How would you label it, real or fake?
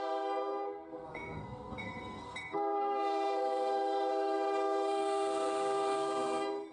fake